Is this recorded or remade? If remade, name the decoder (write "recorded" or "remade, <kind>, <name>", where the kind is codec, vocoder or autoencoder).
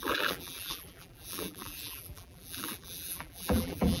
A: remade, vocoder, BigVGAN v2